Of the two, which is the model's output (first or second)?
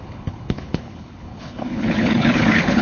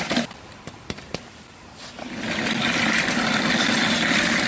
first